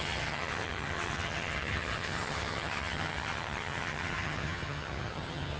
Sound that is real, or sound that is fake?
fake